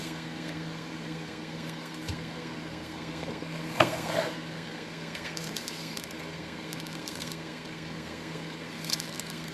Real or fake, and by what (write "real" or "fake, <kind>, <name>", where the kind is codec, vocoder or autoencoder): fake, codec, SNAC